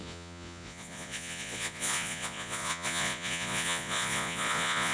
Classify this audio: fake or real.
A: fake